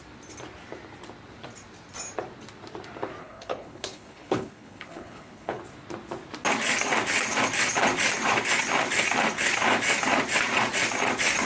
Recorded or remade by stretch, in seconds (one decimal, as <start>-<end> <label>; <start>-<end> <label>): 0.0-3.2 recorded; 3.2-5.6 remade; 5.6-11.5 recorded